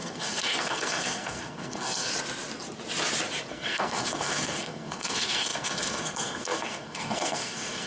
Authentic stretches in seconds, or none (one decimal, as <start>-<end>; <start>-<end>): 2.1-3.5